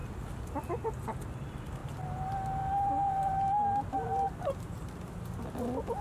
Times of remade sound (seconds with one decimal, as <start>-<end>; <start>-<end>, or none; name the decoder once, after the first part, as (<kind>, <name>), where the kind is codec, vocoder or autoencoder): none